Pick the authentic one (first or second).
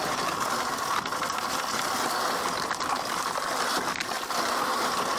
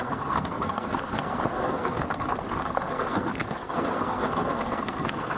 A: first